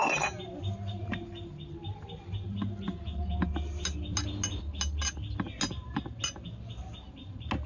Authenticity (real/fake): real